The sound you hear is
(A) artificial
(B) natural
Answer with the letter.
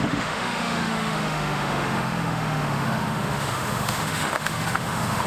A